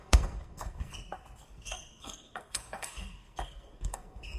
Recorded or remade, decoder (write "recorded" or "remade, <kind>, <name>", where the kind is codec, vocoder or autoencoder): remade, codec, SNAC